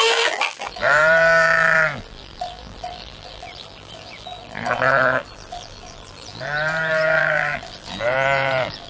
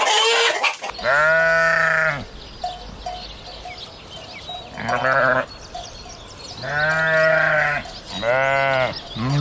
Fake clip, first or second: first